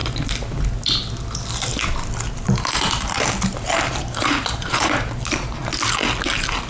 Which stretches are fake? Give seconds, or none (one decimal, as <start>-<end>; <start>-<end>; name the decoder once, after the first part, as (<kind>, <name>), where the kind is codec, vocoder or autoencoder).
4.0-5.6 (vocoder, BigVGAN v2); 6.3-6.7